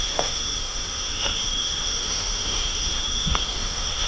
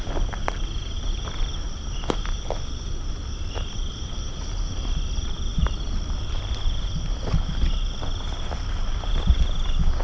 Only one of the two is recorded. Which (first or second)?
second